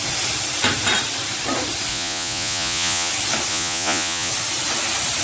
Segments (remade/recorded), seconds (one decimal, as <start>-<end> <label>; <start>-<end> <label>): 0.0-1.9 recorded; 1.9-3.1 remade; 3.1-3.5 recorded; 3.5-4.3 remade; 4.3-5.2 recorded